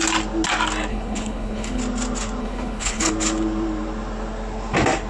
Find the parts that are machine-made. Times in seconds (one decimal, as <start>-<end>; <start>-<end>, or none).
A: 0.9-1.8; 2.4-3.1